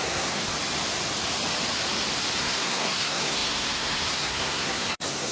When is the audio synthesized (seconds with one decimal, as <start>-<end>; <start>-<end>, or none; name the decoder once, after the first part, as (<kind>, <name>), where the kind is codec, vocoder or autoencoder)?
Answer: 0.0-0.4 (codec, SNAC); 2.4-5.3